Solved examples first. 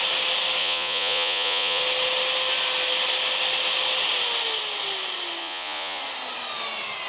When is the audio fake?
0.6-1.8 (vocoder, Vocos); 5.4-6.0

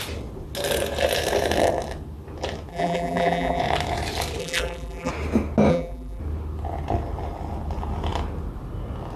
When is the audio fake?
2.7-3.6 (vocoder, BigVGAN v2); 4.4-5.1; 5.7-6.2

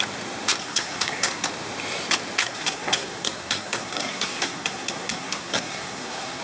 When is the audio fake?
0.6-1.5 (codec, SNAC); 2.4-6.4

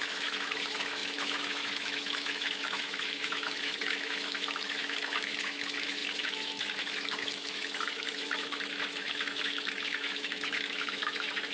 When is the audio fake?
0.0-11.5 (autoencoder, DAC-VAE)

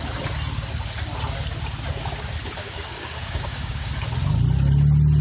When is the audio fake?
2.6-3.9 (codec, DAC)

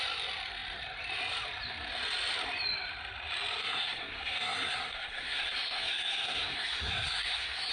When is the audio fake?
3.6-7.7 (codec, SNAC)

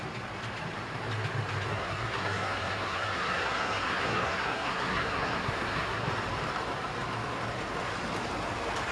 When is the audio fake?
1.7-6.1 (codec, SNAC)

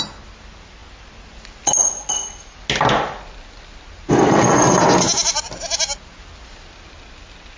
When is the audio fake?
none